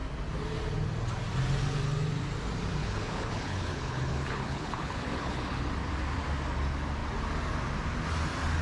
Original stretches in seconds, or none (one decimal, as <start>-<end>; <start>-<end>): 0.0-2.8; 5.7-8.6